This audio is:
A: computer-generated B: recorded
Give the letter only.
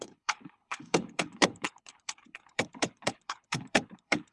A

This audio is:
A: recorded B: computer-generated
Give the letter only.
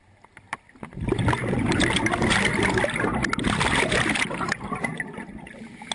A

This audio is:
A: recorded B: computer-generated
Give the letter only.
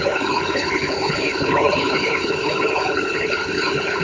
B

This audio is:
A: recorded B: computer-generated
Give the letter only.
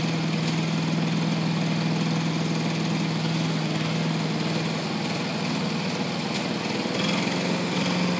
A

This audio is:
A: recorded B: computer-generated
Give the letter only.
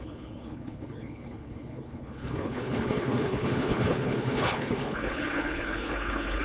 B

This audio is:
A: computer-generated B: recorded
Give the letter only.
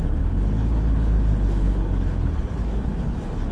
A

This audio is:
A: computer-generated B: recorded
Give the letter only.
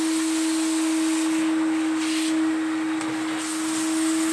B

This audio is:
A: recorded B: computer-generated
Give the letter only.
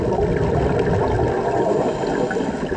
A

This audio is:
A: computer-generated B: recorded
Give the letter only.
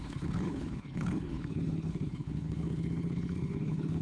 A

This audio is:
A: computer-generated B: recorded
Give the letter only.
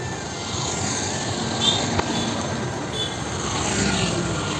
B